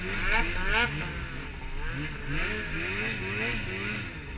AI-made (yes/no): no